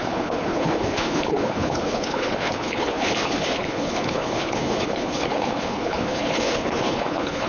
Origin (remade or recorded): remade